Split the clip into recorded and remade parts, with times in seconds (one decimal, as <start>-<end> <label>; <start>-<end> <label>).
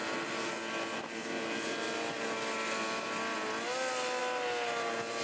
0.0-0.5 remade; 0.5-5.2 recorded